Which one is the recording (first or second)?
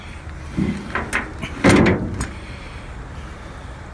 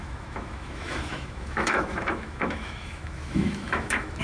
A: first